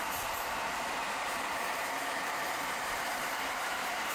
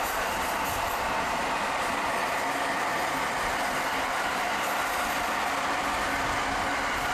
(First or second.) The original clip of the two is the second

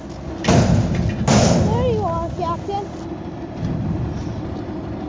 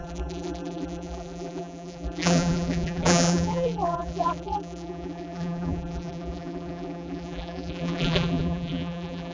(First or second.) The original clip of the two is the first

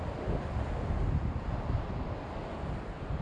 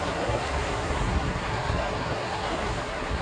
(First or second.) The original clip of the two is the first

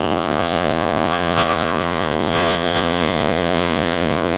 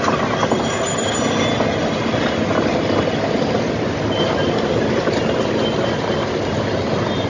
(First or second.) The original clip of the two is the second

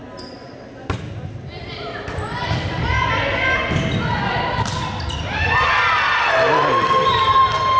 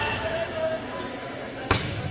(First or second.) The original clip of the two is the first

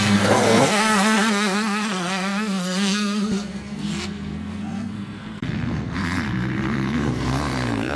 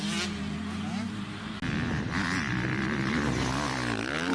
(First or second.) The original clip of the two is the second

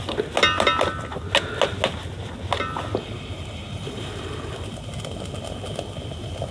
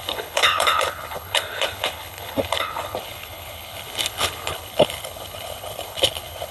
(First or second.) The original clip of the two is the first